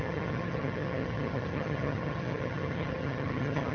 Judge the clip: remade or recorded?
remade